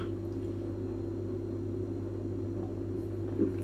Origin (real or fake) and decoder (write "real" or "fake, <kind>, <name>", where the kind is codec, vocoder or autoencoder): real